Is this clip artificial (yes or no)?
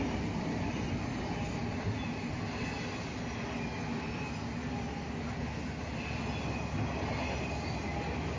no